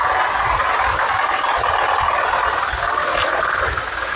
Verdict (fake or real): real